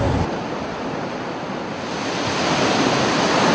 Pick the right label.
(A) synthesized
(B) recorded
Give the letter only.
B